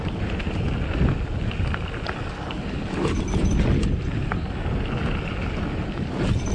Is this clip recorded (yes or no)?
yes